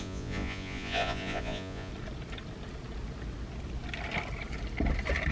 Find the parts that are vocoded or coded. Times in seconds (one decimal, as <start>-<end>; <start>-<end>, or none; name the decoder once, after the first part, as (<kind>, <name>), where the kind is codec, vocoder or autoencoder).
0.0-1.9 (vocoder, Vocos)